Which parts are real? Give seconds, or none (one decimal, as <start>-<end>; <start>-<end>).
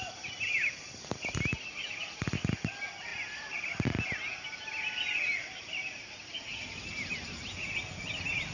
0.0-8.5